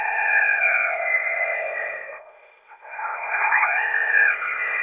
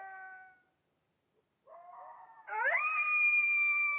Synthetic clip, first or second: first